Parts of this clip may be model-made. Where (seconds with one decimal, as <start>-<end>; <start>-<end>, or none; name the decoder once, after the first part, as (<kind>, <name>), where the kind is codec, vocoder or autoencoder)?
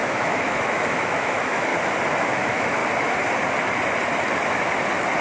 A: 0.0-1.7 (autoencoder, DAC-VAE); 2.2-2.8